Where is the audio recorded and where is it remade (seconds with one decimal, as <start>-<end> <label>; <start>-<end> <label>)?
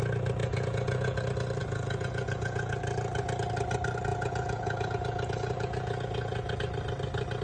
0.0-0.4 recorded; 0.4-1.2 remade; 1.2-1.6 recorded; 1.6-2.7 remade; 2.7-4.1 recorded; 4.1-6.6 remade; 6.6-7.4 recorded